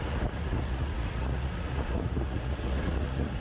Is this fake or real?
fake